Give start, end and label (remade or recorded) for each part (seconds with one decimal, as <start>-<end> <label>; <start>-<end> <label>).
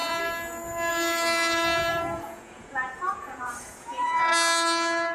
0.0-1.9 recorded; 1.9-4.2 remade; 4.2-5.1 recorded